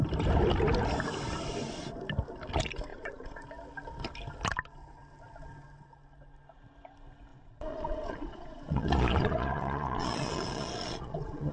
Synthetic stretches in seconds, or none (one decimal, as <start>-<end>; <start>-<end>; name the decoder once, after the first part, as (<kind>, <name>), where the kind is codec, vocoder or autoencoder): 2.9-3.4 (vocoder, Vocos); 7.3-11.5